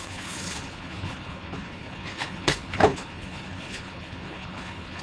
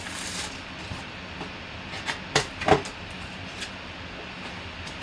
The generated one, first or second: first